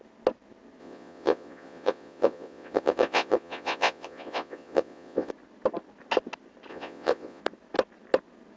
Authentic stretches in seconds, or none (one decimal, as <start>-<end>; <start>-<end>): 0.0-0.8; 5.3-6.7; 7.4-8.6